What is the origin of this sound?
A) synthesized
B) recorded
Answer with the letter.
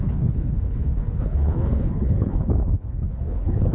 A